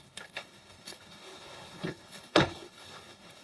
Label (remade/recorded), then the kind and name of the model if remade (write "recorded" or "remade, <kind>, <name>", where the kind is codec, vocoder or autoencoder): remade, codec, HILCodec